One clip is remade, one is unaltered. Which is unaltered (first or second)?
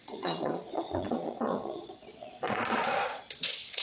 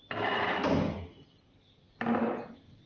second